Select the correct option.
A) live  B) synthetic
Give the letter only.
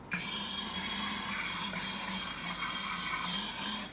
A